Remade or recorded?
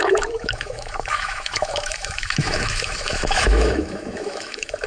remade